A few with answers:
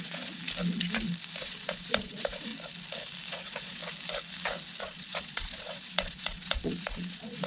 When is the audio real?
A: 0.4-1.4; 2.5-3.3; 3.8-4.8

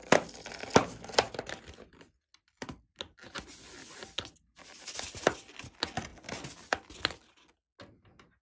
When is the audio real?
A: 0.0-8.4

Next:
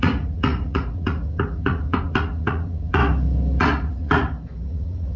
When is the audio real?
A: 3.0-3.6